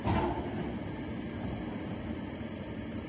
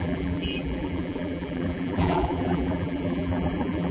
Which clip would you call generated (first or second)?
second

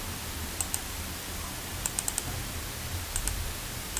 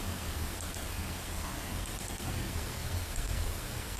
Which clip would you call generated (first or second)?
second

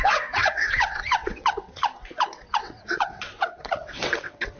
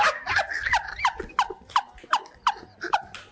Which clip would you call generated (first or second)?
first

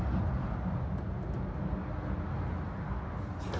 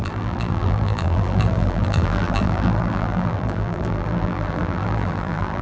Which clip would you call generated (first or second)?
second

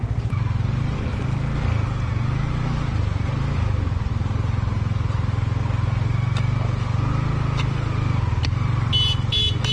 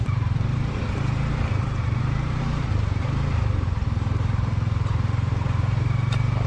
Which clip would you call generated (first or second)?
second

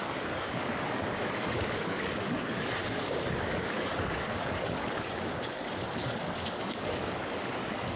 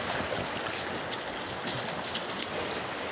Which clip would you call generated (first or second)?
first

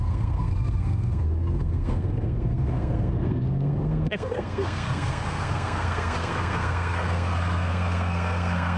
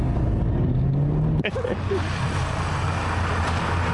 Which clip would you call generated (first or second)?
first